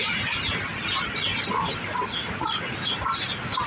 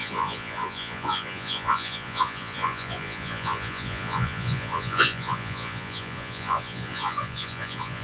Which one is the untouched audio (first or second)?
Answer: first